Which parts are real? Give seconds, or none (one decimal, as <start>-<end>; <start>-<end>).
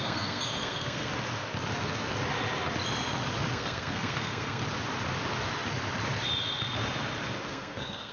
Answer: 1.1-3.5; 4.6-7.5